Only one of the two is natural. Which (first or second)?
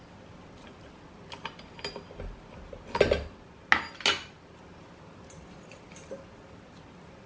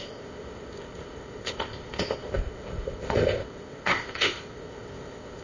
first